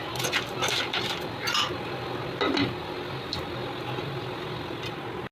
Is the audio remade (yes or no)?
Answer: no